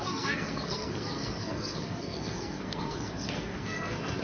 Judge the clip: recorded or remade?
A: remade